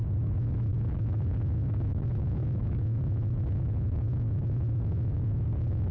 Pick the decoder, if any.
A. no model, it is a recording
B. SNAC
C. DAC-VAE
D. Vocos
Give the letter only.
C